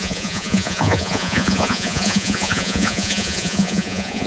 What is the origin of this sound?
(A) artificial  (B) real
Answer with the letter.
A